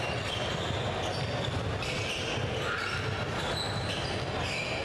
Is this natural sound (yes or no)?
yes